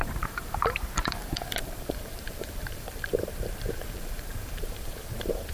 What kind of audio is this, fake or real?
fake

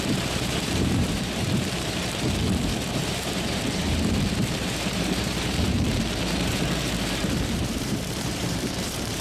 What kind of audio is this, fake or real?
fake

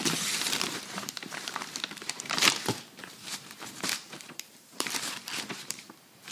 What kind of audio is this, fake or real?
fake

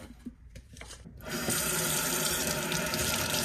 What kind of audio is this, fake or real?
fake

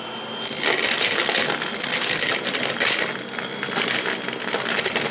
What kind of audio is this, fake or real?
real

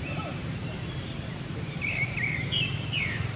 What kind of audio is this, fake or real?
fake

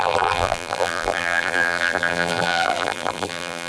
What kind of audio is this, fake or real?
fake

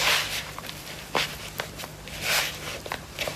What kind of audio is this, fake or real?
fake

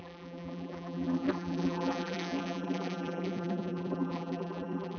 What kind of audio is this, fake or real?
fake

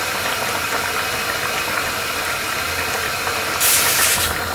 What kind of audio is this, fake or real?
real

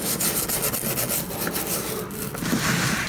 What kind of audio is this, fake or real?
real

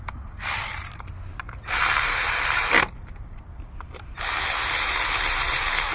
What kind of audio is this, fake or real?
fake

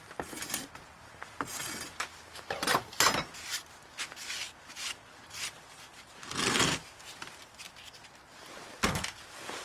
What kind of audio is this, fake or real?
real